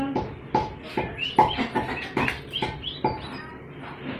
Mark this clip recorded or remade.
recorded